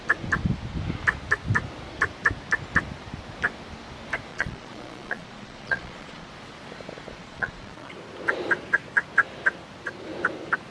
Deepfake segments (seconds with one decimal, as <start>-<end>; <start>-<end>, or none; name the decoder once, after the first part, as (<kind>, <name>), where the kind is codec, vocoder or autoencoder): 4.3-6.3 (vocoder, Vocos); 7.2-7.9

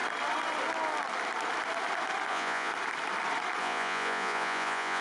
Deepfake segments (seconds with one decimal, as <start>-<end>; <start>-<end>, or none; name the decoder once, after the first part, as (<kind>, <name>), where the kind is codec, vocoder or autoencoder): 2.3-2.7 (vocoder, Vocos); 3.6-5.0

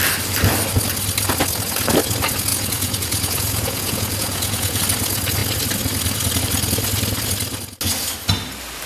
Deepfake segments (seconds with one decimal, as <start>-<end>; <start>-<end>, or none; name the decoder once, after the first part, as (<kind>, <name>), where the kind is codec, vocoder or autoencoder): 2.5-4.8 (vocoder, Vocos)

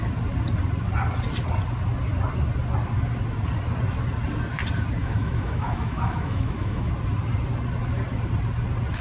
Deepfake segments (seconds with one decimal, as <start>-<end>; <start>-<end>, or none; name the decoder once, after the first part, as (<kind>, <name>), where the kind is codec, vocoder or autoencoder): 5.0-6.9 (autoencoder, DAC-VAE)

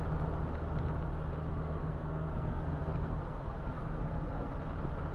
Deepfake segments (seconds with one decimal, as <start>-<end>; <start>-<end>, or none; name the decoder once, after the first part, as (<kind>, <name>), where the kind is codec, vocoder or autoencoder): 1.5-4.6 (codec, SNAC)

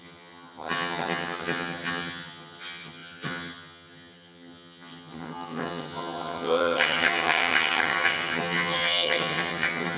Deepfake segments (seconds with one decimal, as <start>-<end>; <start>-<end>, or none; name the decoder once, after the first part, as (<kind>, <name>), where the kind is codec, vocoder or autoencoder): 0.0-10.0 (vocoder, HiFi-GAN)

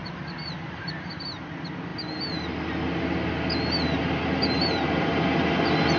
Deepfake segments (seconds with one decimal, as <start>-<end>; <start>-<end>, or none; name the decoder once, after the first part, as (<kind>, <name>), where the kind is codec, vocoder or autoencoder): 0.0-1.2 (vocoder, BigVGAN v2)